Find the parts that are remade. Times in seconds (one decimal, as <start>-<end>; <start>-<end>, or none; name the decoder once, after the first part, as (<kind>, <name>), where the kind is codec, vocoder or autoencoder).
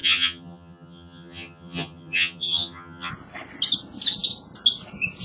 0.0-3.1 (vocoder, HiFi-GAN)